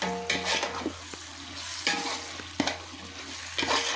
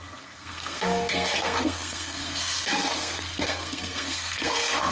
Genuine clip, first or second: first